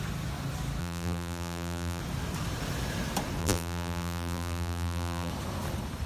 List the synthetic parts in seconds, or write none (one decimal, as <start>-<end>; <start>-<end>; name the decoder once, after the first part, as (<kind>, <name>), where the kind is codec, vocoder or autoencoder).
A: 0.8-2.0 (vocoder, BigVGAN v2); 3.4-5.3